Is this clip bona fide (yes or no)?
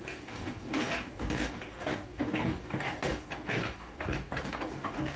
no